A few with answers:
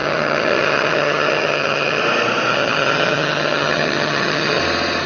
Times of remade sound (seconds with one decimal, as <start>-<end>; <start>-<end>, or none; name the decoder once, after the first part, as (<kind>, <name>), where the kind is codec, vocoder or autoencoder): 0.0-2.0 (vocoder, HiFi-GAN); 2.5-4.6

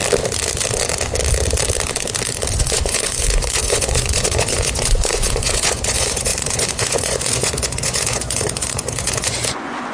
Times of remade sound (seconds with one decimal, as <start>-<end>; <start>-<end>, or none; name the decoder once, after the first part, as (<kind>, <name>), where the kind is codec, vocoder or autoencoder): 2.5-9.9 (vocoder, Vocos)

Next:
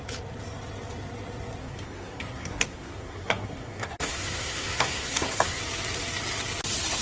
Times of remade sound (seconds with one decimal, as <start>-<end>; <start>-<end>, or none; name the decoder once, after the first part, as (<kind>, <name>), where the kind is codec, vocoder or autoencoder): 1.6-5.6 (codec, SNAC)